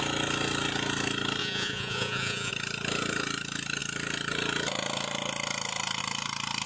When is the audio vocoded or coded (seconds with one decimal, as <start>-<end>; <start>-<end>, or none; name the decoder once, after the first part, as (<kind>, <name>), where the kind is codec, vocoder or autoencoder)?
1.4-2.5 (vocoder, Vocos)